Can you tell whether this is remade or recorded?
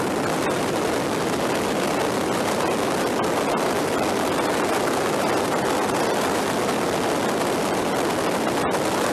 recorded